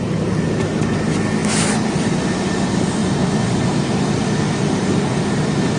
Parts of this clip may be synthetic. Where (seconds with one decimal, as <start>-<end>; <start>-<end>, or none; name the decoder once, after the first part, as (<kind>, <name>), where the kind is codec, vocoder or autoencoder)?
1.4-2.1 (vocoder, BigVGAN v2); 3.0-5.0